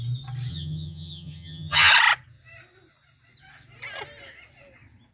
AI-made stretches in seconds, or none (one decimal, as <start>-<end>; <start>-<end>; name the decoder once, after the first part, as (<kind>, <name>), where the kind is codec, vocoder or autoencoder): 0.5-1.9 (vocoder, HiFi-GAN)